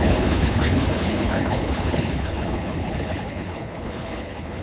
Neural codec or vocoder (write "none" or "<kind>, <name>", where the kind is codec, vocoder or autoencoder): codec, HILCodec